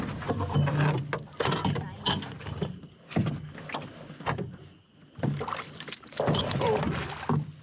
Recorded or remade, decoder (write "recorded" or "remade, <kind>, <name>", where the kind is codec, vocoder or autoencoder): recorded